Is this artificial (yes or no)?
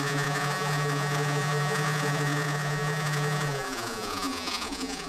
yes